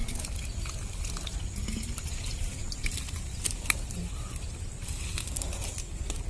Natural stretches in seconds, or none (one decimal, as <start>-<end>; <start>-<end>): 0.0-6.3